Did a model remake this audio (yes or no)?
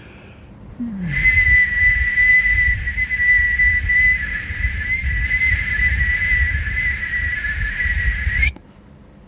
yes